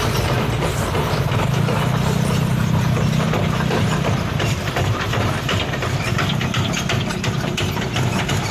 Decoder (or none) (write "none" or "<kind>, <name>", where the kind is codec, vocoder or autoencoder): vocoder, BigVGAN v2